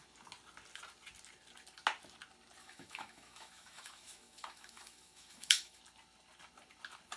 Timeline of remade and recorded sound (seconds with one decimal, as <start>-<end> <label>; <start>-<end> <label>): 0.0-2.6 recorded; 2.6-5.8 remade; 5.8-7.2 recorded